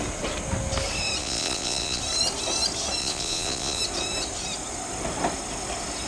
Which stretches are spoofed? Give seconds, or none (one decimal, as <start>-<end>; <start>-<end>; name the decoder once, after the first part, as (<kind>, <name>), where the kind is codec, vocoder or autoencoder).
1.2-2.0 (vocoder, Vocos); 3.0-3.8

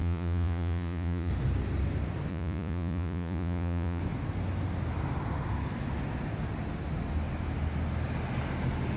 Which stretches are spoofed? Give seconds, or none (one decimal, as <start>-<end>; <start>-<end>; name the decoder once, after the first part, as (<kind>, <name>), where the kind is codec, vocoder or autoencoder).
0.0-1.3 (vocoder, Vocos); 2.3-4.0

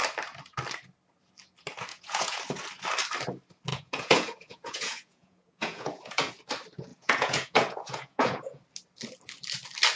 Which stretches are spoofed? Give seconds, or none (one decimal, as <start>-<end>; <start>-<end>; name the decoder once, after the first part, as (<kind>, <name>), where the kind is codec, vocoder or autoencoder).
1.9-2.4 (vocoder, Vocos); 3.7-6.3; 6.9-8.6

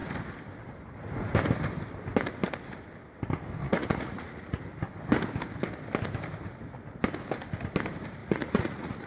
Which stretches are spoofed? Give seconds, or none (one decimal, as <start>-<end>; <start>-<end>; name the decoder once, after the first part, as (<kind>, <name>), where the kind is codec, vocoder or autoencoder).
3.6-4.6 (vocoder, Vocos); 8.2-9.1